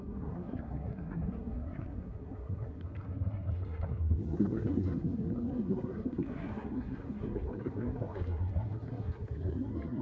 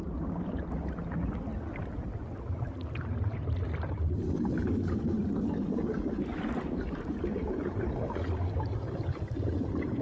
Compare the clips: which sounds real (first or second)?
second